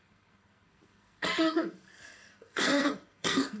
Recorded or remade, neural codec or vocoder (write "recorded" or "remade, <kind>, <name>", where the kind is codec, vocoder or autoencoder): remade, codec, SNAC